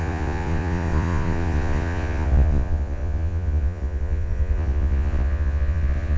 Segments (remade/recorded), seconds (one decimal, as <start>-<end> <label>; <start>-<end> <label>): 0.0-6.2 remade